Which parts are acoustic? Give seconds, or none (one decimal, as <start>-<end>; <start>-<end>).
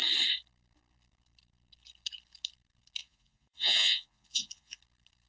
0.0-3.0; 4.8-5.3